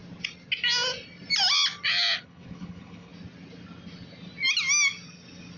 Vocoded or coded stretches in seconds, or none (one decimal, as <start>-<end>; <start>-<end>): 2.2-3.1